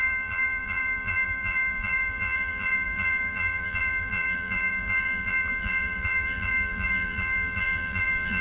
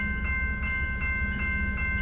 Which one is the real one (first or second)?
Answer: second